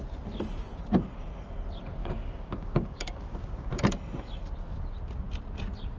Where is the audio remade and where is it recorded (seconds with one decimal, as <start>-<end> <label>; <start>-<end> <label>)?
0.0-2.0 recorded; 2.0-3.7 remade; 3.7-6.0 recorded